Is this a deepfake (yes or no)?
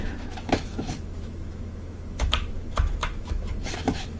yes